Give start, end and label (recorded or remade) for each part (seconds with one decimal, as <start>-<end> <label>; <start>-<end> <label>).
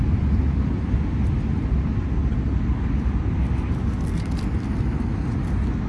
0.0-5.9 recorded